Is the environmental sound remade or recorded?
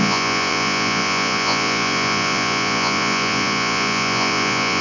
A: remade